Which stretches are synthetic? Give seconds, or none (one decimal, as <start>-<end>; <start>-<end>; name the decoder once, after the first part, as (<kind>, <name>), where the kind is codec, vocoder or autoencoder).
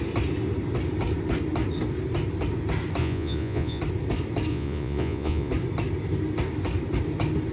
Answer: 3.0-3.8 (vocoder, Vocos); 4.5-5.5